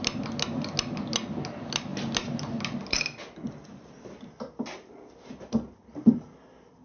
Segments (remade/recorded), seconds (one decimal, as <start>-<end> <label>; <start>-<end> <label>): 0.0-6.8 recorded